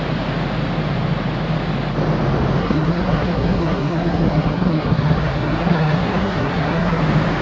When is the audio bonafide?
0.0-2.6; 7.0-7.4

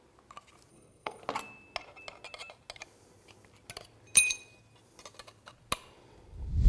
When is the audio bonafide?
0.0-0.7; 1.2-6.7